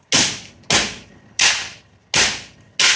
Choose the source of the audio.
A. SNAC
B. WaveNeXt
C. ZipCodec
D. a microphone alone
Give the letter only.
D